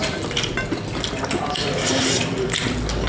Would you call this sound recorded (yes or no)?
no